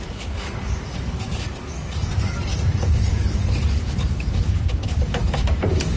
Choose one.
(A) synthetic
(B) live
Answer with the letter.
A